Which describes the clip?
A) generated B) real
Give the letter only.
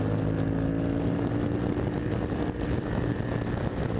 B